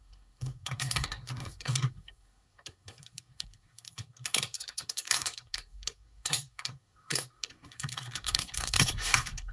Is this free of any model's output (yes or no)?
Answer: no